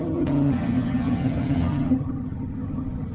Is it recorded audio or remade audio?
remade